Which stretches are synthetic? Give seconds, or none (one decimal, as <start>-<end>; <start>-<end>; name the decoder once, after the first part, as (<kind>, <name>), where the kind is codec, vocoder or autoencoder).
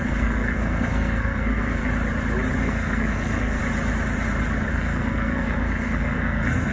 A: 0.0-1.8 (codec, SNAC); 2.6-3.6; 4.7-6.7